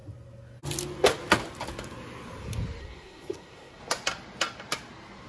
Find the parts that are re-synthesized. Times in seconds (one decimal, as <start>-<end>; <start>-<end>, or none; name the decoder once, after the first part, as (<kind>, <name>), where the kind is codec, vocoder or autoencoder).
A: 2.8-3.8 (codec, SNAC)